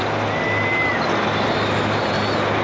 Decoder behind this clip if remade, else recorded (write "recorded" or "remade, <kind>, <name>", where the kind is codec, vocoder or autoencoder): recorded